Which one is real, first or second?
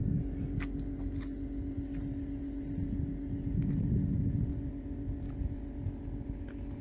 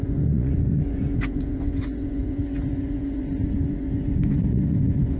first